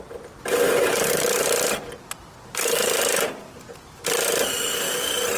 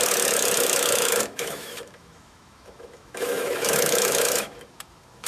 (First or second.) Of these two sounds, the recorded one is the first